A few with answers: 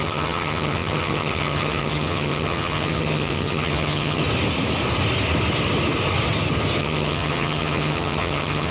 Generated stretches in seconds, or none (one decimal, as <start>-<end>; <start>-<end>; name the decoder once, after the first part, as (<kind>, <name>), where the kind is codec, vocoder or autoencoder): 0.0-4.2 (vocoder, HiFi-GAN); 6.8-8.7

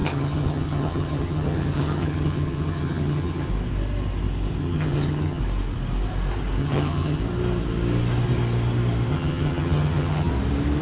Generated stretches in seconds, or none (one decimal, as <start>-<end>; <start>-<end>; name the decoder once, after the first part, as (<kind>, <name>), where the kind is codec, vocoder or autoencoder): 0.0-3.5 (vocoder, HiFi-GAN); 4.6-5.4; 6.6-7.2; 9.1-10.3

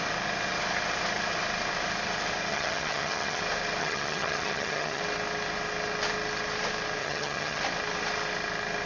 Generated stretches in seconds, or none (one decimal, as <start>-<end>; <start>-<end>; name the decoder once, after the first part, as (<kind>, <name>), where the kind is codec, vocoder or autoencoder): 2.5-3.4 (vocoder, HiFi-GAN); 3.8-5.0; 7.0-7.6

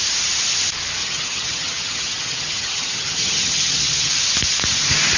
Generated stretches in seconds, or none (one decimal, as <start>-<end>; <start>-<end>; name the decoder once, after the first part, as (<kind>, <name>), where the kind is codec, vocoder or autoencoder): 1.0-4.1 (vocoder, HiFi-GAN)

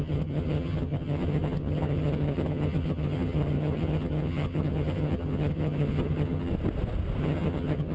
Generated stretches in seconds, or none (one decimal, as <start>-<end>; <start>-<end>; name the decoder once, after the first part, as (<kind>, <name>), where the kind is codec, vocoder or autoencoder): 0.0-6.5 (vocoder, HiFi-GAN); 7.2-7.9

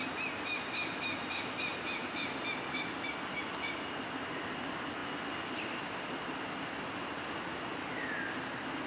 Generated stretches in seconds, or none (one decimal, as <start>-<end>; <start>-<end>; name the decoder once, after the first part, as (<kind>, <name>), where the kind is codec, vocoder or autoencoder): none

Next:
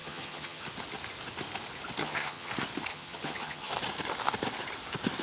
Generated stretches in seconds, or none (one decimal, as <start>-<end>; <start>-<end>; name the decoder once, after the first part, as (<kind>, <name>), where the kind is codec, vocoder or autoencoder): 0.0-0.6 (vocoder, HiFi-GAN); 2.0-2.5; 2.9-3.7

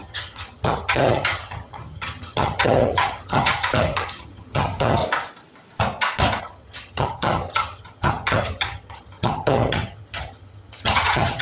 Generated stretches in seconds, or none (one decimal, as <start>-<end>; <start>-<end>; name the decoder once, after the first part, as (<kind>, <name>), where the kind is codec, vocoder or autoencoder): 0.0-5.0 (vocoder, HiFi-GAN); 6.4-11.4